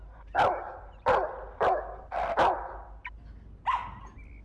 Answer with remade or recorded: recorded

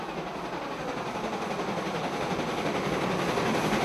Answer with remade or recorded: recorded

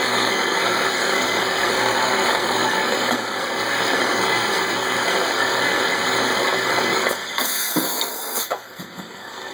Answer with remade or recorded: remade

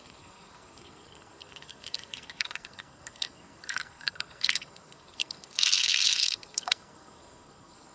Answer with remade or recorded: remade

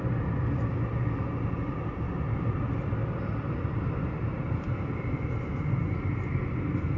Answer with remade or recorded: recorded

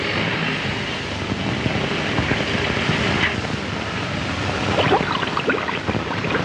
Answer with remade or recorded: recorded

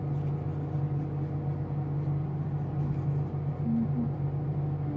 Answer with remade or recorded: recorded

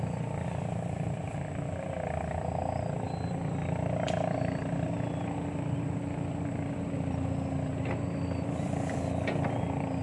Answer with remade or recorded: recorded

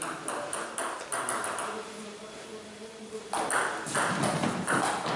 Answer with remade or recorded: recorded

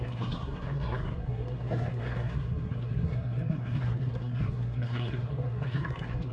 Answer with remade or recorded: remade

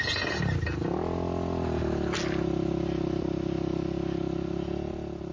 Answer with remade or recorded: recorded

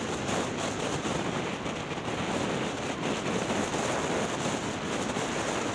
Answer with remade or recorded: recorded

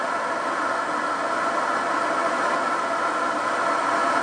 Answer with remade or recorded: recorded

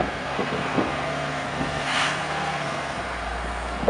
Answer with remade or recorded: remade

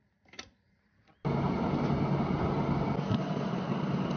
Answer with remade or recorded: recorded